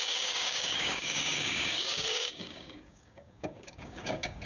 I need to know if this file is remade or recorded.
remade